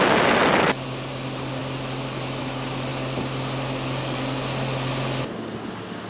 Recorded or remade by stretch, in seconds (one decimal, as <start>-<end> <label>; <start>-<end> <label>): 0.0-6.1 recorded